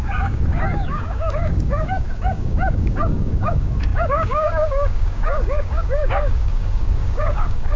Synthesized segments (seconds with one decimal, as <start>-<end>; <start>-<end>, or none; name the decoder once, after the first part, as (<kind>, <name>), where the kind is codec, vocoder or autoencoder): 0.0-7.8 (codec, DAC)